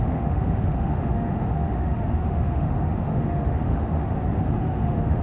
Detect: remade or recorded remade